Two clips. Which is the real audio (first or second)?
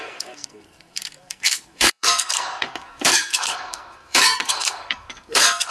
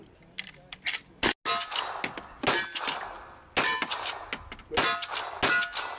second